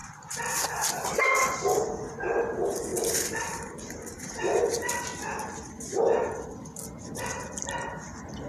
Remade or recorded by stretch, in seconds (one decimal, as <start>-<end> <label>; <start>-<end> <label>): 0.0-0.9 remade; 0.9-2.9 recorded; 2.9-5.0 remade; 5.0-8.5 recorded